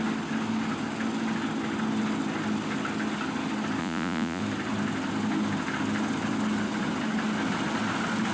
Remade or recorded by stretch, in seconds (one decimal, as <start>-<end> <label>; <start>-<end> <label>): 0.0-3.8 recorded; 3.8-4.4 remade; 4.4-8.3 recorded